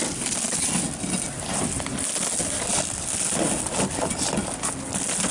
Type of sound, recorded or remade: recorded